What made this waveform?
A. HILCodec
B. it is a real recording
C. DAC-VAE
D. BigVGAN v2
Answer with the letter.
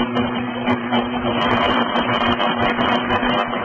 D